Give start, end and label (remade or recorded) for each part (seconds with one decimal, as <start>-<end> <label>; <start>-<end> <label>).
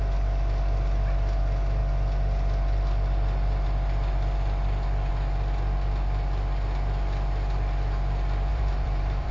0.0-8.5 recorded; 8.5-9.3 remade